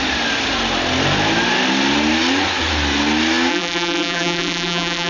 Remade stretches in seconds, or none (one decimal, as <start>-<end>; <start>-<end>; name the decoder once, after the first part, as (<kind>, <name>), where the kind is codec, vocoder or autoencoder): 3.5-5.1 (vocoder, BigVGAN v2)